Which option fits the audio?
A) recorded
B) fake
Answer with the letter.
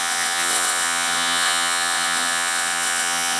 B